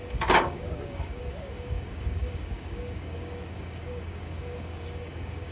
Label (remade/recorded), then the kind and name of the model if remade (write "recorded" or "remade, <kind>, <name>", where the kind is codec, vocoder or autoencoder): remade, codec, DAC